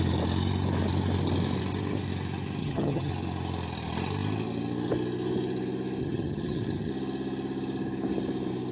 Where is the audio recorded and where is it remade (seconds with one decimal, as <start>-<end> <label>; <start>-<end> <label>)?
0.0-2.6 recorded; 2.6-3.1 remade; 3.1-6.0 recorded; 6.0-6.9 remade; 6.9-8.7 recorded